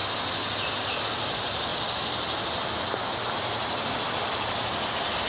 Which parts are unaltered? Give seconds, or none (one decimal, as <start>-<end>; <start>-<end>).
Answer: 0.0-5.3

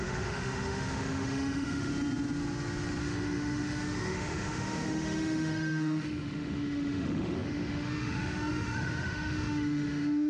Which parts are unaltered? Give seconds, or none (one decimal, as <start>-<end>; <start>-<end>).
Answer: 1.9-3.0

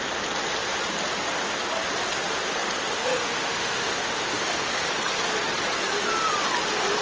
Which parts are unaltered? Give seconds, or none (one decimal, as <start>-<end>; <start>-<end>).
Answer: 0.0-2.9; 4.7-7.0

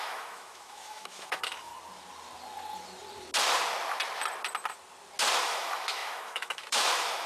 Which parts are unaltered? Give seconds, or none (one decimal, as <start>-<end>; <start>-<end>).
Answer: 1.7-5.4

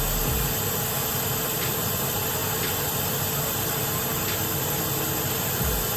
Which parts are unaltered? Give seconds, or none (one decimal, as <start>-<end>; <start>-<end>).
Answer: 0.0-6.0

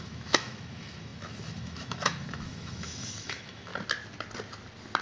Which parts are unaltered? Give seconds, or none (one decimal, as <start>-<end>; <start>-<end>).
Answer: 3.7-5.0